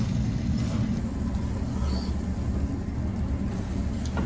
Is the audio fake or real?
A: real